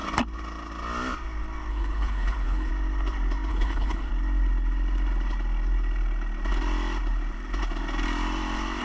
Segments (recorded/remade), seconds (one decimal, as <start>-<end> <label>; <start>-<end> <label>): 0.0-1.7 recorded; 1.7-2.7 remade; 2.7-3.5 recorded; 3.5-4.1 remade; 4.1-8.8 recorded